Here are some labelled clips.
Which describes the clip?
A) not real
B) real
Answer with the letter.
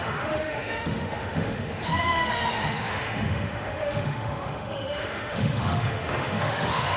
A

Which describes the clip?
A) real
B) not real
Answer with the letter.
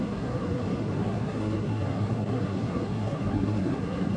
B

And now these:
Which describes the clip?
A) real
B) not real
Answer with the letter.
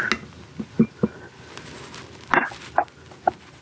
A